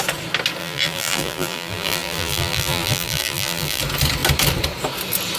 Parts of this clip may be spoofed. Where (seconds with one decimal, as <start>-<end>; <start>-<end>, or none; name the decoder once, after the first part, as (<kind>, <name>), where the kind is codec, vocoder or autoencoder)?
0.6-3.8 (vocoder, BigVGAN v2)